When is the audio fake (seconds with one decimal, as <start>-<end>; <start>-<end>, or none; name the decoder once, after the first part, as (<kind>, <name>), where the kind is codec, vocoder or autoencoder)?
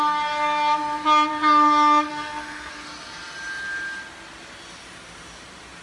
2.1-2.7 (codec, SNAC)